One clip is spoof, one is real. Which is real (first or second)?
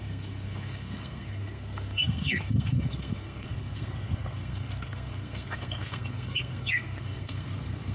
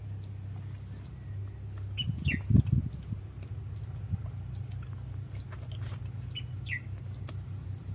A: second